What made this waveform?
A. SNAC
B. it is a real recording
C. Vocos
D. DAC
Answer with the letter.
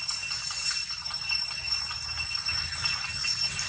B